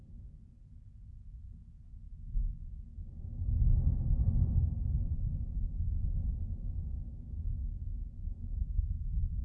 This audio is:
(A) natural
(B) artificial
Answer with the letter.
A